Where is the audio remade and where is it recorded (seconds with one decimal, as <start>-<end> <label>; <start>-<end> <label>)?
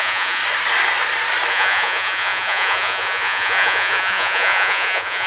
0.0-0.4 remade; 0.4-1.5 recorded; 1.5-5.3 remade